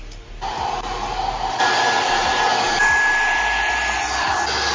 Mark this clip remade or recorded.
recorded